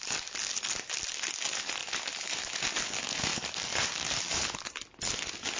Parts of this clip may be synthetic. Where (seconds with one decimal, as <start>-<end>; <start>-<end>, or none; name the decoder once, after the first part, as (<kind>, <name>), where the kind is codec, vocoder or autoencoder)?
none